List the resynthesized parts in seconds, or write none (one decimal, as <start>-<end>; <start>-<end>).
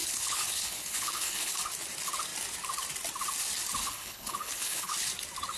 0.0-1.6; 3.8-4.9